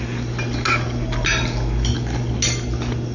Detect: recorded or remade recorded